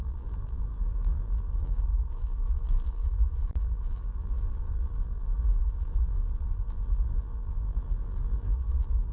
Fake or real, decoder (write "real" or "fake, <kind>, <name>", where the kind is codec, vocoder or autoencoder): fake, vocoder, BigVGAN v2